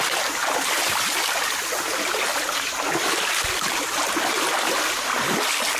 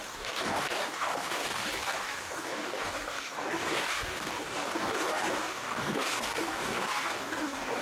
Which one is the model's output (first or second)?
second